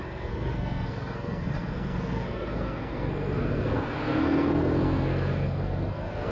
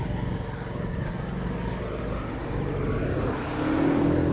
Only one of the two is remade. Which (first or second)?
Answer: first